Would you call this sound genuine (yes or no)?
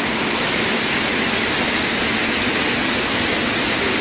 yes